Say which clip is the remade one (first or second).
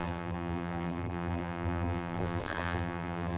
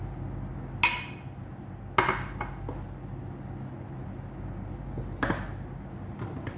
first